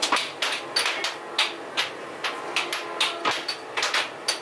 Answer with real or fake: real